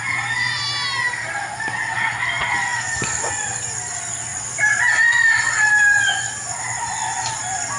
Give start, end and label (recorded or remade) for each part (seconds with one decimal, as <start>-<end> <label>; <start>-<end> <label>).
0.0-7.8 recorded